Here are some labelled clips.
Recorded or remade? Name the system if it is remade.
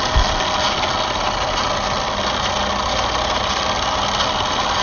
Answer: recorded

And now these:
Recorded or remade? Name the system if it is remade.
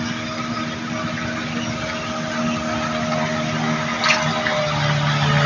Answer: recorded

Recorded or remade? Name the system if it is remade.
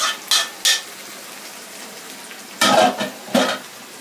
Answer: recorded